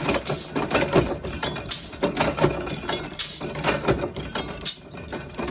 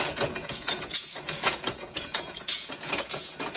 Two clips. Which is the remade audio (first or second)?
second